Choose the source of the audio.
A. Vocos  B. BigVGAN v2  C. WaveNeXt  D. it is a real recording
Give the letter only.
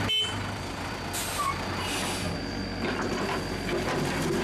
D